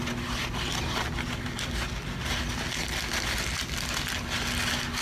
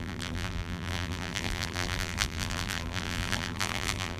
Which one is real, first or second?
first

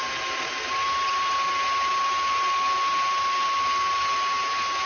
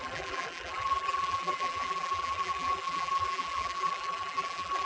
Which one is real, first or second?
first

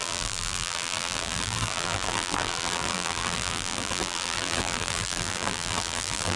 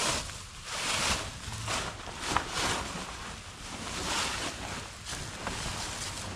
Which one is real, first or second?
second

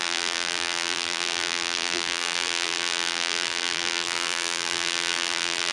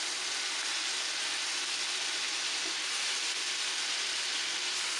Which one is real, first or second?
second